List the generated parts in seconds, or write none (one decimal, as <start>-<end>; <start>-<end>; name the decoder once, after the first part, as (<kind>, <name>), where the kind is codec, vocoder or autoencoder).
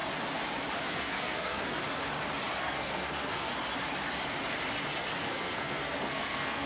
0.8-1.8 (codec, SNAC); 2.6-3.5; 5.2-6.7